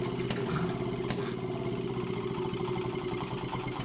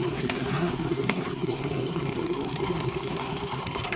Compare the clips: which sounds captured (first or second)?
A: first